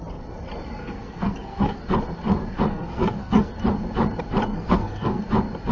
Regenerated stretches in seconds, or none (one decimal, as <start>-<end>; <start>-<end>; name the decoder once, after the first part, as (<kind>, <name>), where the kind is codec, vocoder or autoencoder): 0.8-1.8 (codec, SNAC); 2.7-3.5; 4.5-5.2